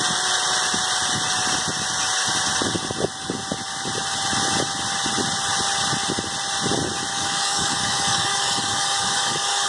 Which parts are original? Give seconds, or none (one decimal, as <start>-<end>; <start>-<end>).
0.0-7.1